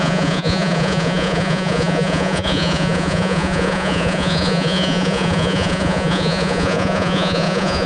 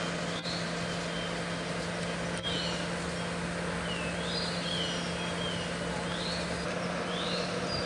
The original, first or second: second